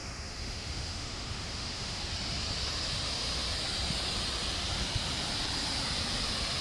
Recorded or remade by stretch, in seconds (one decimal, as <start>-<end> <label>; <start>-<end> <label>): 0.0-2.0 remade; 2.0-6.6 recorded